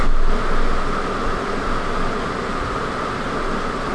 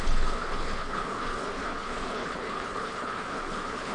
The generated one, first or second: second